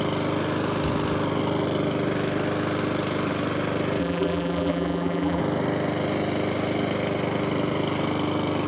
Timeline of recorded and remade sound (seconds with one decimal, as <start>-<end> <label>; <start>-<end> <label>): 0.0-4.0 recorded; 4.0-5.4 remade; 5.4-8.7 recorded